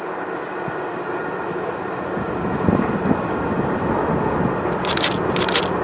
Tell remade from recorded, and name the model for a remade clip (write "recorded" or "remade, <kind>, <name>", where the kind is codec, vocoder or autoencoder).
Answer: recorded